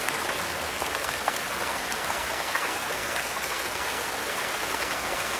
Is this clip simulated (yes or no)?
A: yes